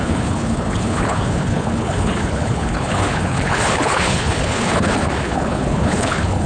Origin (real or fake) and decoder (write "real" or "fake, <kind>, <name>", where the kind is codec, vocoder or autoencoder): fake, codec, HILCodec